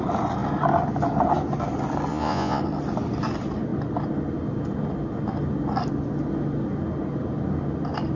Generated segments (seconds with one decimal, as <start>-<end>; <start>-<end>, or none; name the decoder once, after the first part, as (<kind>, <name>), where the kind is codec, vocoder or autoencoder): 2.1-2.6 (vocoder, Vocos)